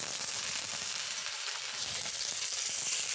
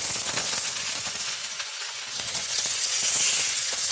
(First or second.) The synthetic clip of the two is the second